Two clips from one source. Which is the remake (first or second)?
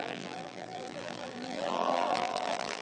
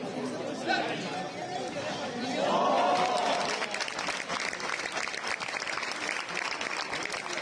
first